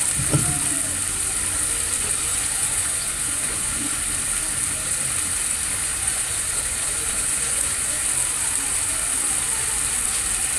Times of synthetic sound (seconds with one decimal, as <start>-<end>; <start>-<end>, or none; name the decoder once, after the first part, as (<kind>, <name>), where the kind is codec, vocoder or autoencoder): 2.3-4.0 (vocoder, Vocos); 5.8-8.0